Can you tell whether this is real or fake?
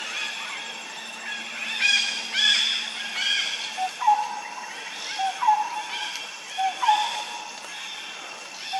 real